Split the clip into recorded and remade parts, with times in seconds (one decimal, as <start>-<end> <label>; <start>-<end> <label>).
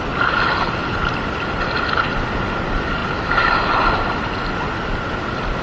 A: 0.0-5.6 recorded